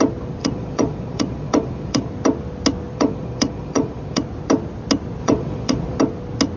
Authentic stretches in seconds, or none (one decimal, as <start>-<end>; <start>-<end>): 0.0-0.4; 2.1-2.9; 4.2-5.2; 6.0-6.6